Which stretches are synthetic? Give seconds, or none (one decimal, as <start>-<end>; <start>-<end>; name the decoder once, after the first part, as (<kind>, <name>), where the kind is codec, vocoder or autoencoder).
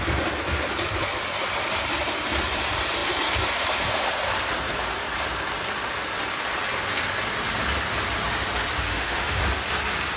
8.9-9.4 (autoencoder, DAC-VAE)